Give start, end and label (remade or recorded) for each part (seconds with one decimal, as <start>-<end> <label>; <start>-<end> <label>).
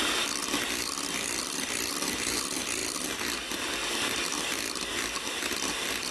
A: 0.0-0.4 recorded; 0.4-2.4 remade; 2.4-6.1 recorded